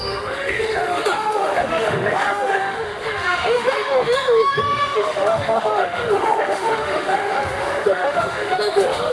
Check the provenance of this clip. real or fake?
fake